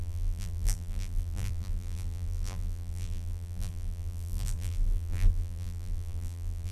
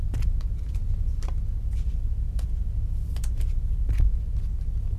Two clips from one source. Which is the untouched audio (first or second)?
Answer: second